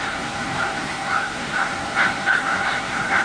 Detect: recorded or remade remade